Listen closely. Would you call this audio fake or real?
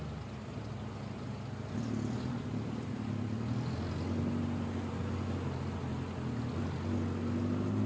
real